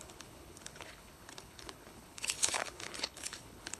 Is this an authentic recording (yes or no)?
no